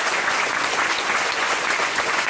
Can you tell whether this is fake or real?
fake